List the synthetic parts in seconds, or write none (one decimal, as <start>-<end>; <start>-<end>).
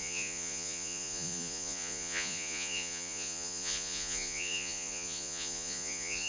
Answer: 0.0-6.3